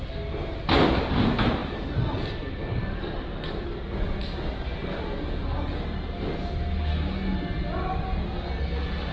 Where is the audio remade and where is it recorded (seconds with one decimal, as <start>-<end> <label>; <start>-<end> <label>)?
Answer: 0.0-1.6 recorded; 1.6-3.0 remade; 3.0-9.1 recorded

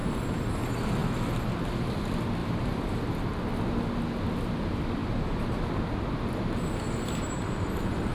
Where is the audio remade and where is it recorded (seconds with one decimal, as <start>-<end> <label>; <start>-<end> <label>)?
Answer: 0.0-0.6 remade; 0.6-2.4 recorded; 2.4-3.0 remade; 3.0-5.0 recorded; 5.0-5.6 remade; 5.6-8.1 recorded

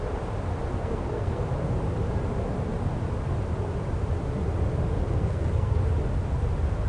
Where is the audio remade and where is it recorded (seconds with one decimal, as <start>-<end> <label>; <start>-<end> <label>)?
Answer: 0.0-0.7 recorded; 0.7-1.4 remade; 1.4-5.0 recorded; 5.0-5.8 remade; 5.8-6.9 recorded

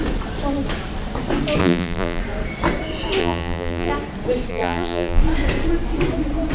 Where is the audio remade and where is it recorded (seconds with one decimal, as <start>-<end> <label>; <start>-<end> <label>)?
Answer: 0.0-1.6 recorded; 1.6-2.2 remade; 2.2-3.2 recorded; 3.2-3.9 remade; 3.9-4.5 recorded; 4.5-5.2 remade; 5.2-6.5 recorded

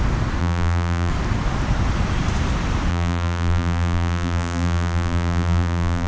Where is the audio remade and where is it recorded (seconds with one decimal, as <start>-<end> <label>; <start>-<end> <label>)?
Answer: 0.0-0.4 recorded; 0.4-1.1 remade; 1.1-2.9 recorded; 2.9-6.1 remade

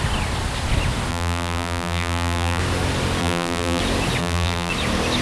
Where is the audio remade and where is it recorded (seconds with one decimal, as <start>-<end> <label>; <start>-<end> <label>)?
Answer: 0.0-1.1 recorded; 1.1-2.6 remade; 2.6-3.2 recorded; 3.2-3.8 remade; 3.8-4.2 recorded; 4.2-4.7 remade; 4.7-5.2 recorded